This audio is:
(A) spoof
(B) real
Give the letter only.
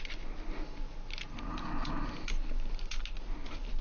B